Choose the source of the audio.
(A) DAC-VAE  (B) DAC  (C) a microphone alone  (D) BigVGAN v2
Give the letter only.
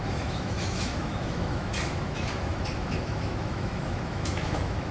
A